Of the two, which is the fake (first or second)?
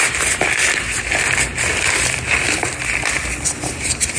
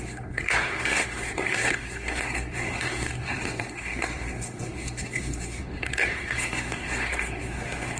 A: second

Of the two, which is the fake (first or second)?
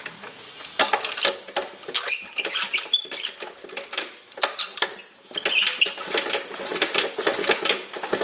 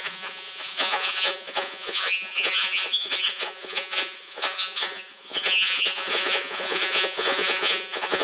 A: second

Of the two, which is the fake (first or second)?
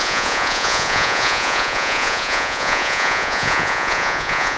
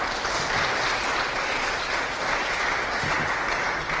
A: first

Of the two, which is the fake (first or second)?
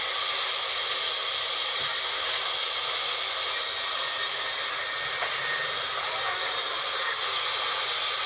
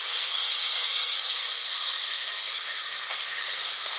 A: second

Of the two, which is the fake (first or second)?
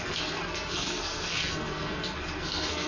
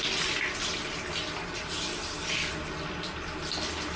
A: first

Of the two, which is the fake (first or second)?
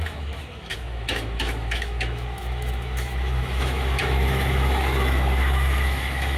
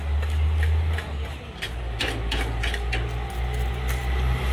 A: first